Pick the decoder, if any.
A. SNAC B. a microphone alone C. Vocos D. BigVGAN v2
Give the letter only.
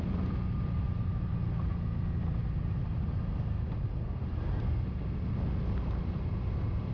B